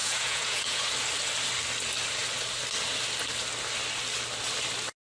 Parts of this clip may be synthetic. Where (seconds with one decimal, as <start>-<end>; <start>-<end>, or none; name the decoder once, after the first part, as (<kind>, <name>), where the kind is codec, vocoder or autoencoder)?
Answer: 0.0-0.8 (vocoder, Vocos)